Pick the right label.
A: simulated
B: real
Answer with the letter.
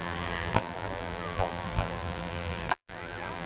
A